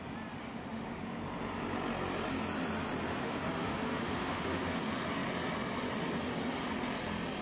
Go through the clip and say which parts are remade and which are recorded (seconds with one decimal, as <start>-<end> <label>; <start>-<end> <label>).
0.0-0.4 recorded; 0.4-1.0 remade; 1.0-3.2 recorded; 3.2-4.8 remade; 4.8-7.4 recorded